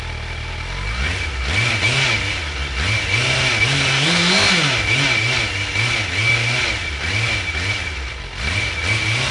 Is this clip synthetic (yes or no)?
no